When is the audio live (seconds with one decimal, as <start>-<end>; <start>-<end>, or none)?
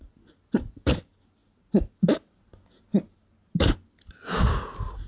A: 0.0-5.1